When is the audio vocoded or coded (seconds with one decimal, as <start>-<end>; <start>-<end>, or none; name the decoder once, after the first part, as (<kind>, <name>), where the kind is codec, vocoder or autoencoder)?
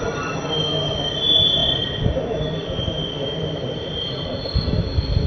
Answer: none